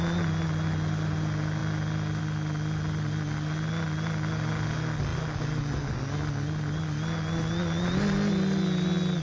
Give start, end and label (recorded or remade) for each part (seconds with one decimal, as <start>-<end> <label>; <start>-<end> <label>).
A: 0.0-9.2 recorded